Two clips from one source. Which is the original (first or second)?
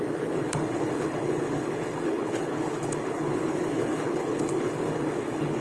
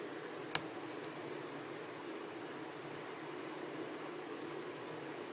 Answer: second